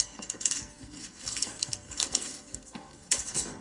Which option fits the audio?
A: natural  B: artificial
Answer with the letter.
B